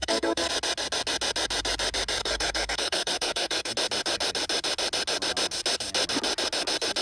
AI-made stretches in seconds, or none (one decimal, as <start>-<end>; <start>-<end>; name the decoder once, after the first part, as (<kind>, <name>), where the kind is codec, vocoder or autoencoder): 0.0-0.5 (codec, SNAC); 2.2-3.7